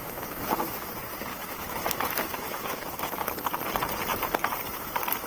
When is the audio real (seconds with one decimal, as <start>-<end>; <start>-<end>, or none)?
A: 0.9-1.3; 3.3-5.3

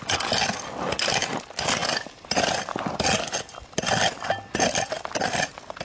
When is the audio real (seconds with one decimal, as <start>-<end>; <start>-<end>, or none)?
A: 0.0-5.8

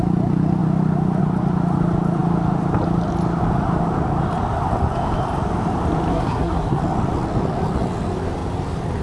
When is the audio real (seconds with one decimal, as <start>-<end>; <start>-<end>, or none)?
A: 0.0-6.1; 6.8-9.0